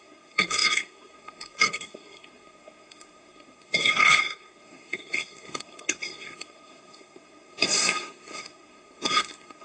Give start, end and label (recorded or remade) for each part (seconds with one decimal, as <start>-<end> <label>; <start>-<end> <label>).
0.0-9.6 remade